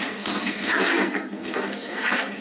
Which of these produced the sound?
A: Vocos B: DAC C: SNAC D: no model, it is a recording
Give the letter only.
C